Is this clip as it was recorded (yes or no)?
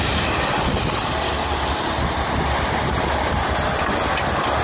yes